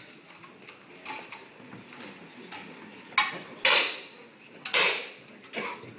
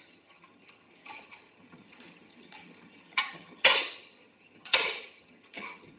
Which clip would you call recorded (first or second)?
first